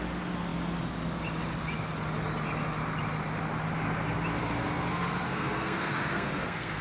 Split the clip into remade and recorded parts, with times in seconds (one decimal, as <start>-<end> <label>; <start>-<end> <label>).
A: 0.0-4.4 recorded; 4.4-6.8 remade